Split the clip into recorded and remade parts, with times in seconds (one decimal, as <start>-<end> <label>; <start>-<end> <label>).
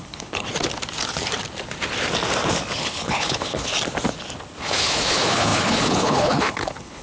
0.0-0.5 remade; 0.5-2.8 recorded; 2.8-3.7 remade; 3.7-4.6 recorded; 4.6-7.0 remade